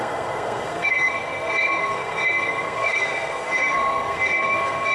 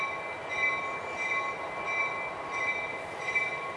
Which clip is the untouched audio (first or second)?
second